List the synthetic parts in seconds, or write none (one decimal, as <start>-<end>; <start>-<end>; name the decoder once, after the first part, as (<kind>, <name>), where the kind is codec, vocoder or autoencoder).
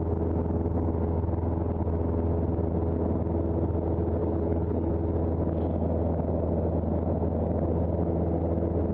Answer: 4.2-4.9 (codec, HILCodec)